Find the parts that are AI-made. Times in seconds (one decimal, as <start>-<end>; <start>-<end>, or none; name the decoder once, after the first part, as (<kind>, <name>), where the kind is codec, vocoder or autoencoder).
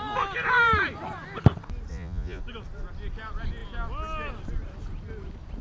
1.9-2.4 (vocoder, Vocos)